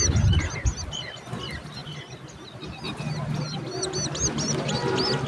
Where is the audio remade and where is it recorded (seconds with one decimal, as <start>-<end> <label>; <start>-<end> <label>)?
0.0-5.3 recorded